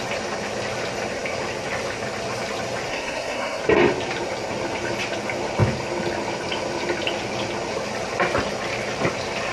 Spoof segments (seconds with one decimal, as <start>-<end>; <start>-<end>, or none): 2.9-3.6

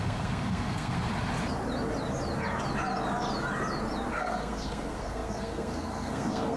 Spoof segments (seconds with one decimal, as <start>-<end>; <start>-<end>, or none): 0.0-1.1; 4.1-6.6

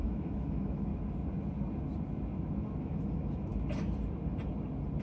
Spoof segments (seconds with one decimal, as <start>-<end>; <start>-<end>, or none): 0.0-0.9; 2.8-3.5

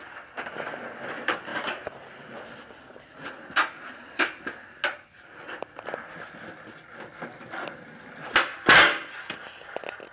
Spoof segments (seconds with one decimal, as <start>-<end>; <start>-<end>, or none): none

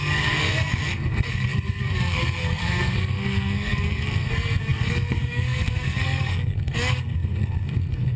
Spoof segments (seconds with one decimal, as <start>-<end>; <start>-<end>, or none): 0.0-8.2

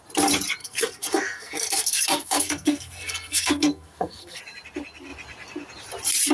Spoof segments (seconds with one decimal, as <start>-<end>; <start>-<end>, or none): 0.6-4.4